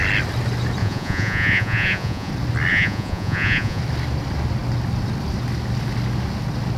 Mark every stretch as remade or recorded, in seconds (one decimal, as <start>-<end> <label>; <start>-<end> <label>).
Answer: 0.0-0.8 recorded; 0.8-2.3 remade; 2.3-2.7 recorded; 2.7-3.8 remade; 3.8-6.8 recorded